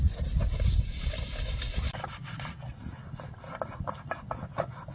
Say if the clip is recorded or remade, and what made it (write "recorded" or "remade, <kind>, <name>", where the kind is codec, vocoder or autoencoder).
recorded